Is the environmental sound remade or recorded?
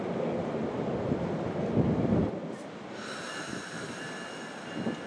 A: recorded